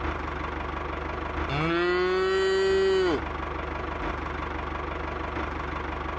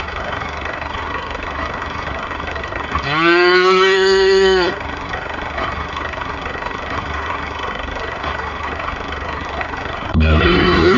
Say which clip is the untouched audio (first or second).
first